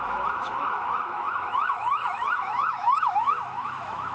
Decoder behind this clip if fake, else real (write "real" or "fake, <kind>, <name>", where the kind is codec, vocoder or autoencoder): fake, autoencoder, DAC-VAE